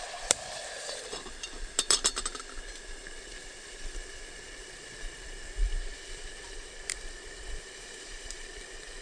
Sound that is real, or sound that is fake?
fake